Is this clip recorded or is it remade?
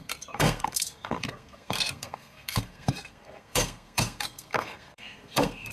remade